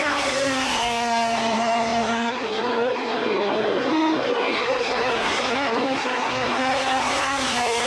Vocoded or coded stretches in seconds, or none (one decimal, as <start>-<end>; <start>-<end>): 0.0-7.9